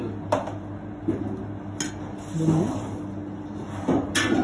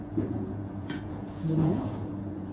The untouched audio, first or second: first